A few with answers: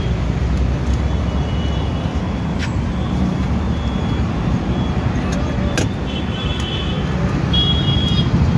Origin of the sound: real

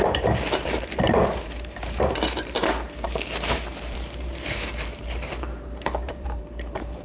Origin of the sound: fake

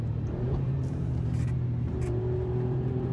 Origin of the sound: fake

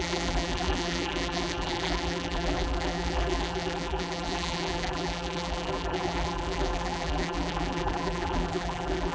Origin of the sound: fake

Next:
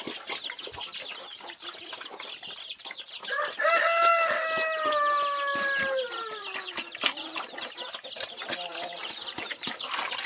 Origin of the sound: real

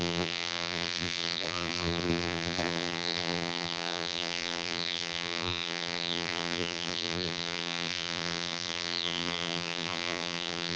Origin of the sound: fake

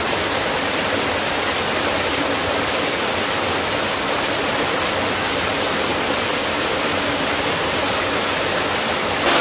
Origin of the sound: real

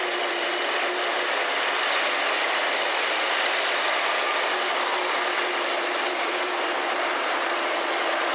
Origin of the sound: real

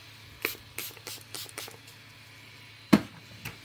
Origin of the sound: real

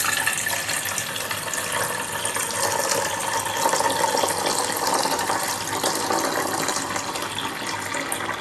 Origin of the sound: real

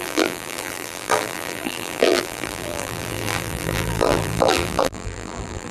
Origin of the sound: fake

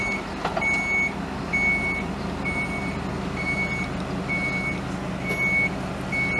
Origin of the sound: real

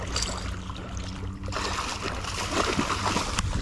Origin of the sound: real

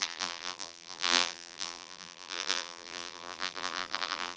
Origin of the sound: fake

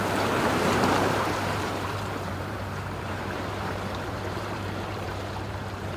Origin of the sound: fake